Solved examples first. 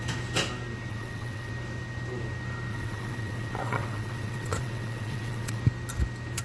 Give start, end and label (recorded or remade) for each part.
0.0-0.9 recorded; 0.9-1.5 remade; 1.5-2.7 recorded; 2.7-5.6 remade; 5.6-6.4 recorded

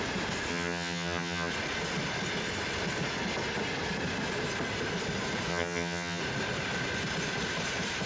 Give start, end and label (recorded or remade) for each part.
0.0-0.5 recorded; 0.5-1.5 remade; 1.5-5.5 recorded; 5.5-6.2 remade; 6.2-8.1 recorded

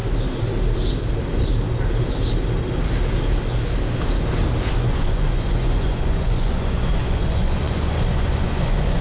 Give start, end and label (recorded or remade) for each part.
0.0-4.7 recorded; 4.7-9.0 remade

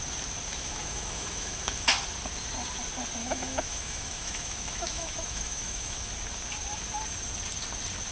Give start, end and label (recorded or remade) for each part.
0.0-0.5 recorded; 0.5-1.9 remade; 1.9-3.2 recorded; 3.2-6.1 remade; 6.1-8.1 recorded

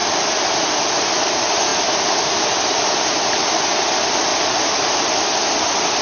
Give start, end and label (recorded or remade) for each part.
0.0-0.7 remade; 0.7-1.7 recorded; 1.7-2.3 remade; 2.3-4.3 recorded; 4.3-6.0 remade